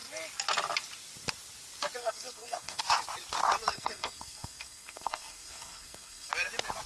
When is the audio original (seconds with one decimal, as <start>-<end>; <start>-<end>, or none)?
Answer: 0.0-2.0; 2.8-3.7; 6.3-6.9